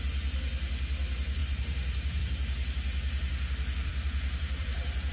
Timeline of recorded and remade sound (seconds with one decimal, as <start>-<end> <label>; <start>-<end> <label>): 0.0-1.4 recorded; 1.4-2.2 remade; 2.2-3.9 recorded; 3.9-5.1 remade